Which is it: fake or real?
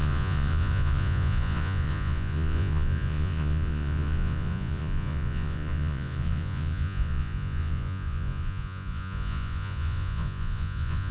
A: fake